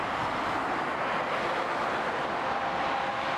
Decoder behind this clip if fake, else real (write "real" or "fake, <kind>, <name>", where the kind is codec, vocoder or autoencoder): real